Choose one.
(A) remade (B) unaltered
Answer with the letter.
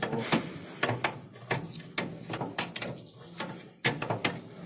B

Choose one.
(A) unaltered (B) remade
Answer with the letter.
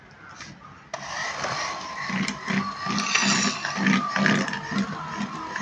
A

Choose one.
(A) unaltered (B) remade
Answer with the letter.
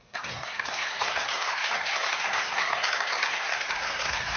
B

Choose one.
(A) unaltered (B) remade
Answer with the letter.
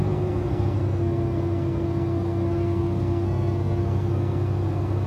B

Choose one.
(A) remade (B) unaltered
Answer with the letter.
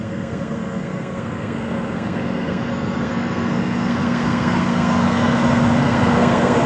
A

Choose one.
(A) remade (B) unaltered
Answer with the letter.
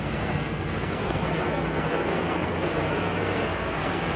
A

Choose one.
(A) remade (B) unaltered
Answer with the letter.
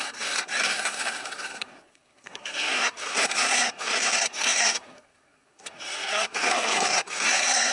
A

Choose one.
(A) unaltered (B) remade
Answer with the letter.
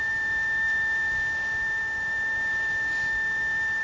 A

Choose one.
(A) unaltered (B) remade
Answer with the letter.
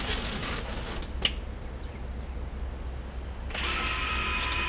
A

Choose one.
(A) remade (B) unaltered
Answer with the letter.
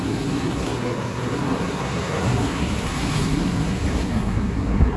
A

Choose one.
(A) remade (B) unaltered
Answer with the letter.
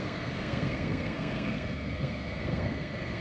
A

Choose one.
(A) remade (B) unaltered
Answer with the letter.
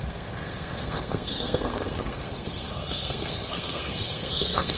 A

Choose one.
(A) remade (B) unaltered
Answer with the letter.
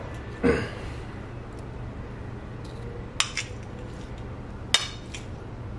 B